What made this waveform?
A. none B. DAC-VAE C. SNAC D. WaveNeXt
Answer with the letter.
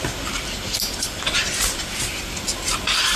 A